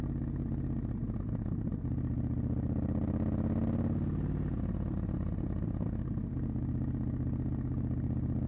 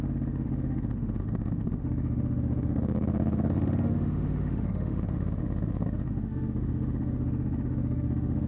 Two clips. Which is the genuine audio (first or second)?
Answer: first